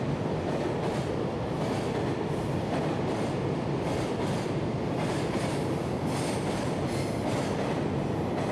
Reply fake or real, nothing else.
real